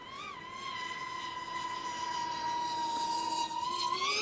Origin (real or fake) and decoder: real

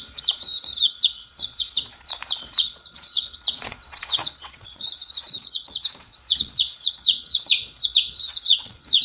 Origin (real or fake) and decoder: fake, vocoder, Vocos